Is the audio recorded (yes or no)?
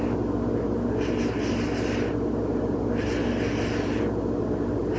yes